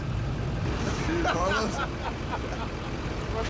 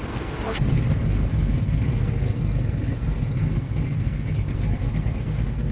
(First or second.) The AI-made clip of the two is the second